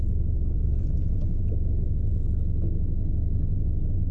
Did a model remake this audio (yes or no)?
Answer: no